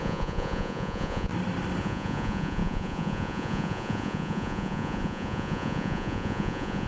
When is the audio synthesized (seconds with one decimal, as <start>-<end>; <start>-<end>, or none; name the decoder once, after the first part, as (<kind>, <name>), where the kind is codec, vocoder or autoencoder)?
0.0-1.3 (vocoder, Vocos); 1.8-6.9